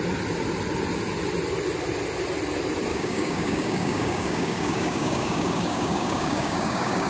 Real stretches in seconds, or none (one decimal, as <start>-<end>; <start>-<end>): 0.0-2.9